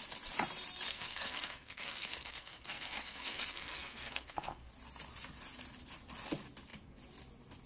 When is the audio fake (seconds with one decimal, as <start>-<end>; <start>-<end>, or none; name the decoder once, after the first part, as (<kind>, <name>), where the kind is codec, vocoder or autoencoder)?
0.9-4.7 (codec, SNAC)